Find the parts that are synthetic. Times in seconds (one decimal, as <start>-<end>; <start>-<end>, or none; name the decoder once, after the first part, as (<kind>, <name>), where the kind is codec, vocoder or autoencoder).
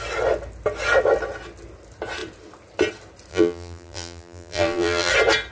3.3-5.1 (vocoder, BigVGAN v2)